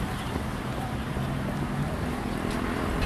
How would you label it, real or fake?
real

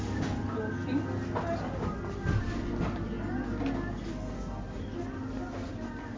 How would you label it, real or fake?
real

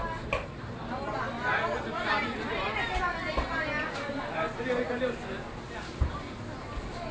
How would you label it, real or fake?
real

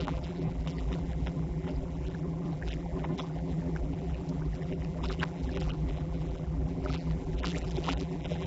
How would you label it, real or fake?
fake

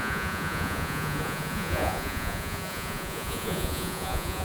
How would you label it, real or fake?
fake